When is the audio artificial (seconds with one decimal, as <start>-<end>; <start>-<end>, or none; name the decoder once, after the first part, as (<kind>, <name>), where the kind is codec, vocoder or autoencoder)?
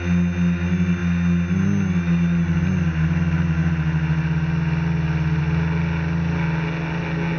none